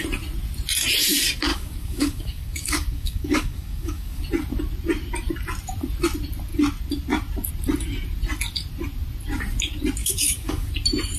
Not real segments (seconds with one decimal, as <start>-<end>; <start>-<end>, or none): 1.5-4.2; 10.0-10.7